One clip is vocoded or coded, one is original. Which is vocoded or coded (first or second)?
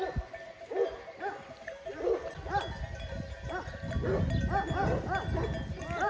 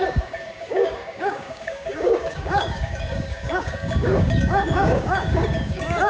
second